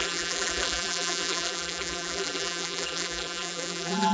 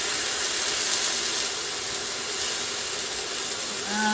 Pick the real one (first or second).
second